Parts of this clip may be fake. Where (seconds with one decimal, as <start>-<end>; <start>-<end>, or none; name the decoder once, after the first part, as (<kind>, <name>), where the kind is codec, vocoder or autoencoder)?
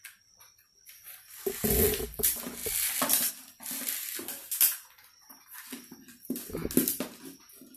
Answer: 2.6-3.3 (vocoder, BigVGAN v2)